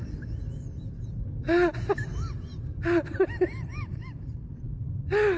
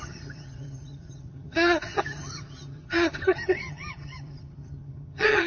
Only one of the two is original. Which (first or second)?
first